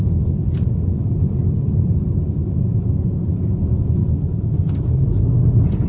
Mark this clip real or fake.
real